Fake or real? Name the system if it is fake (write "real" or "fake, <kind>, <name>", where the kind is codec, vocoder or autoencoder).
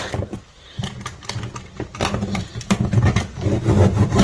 real